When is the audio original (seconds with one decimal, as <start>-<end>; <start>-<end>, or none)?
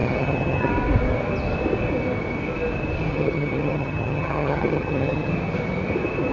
0.7-3.1; 5.3-6.3